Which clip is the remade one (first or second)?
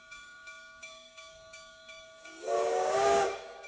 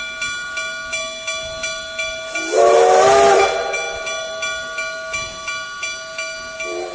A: first